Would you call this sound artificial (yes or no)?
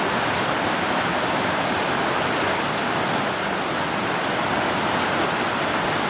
no